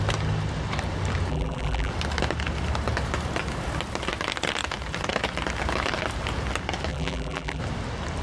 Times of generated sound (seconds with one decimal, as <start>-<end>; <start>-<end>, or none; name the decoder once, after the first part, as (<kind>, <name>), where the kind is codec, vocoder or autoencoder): 1.3-1.9 (vocoder, BigVGAN v2); 6.9-7.6